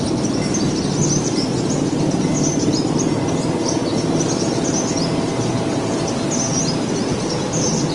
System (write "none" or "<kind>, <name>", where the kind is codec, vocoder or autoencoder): none